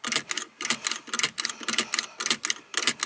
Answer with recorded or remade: recorded